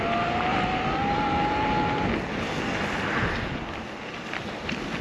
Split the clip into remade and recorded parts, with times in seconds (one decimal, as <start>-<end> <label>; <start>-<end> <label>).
0.0-5.0 recorded